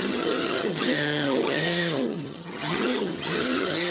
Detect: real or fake fake